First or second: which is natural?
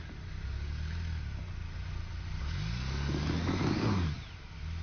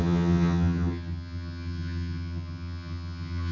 first